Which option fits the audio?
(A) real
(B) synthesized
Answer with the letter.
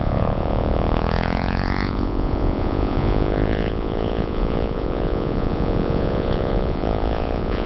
B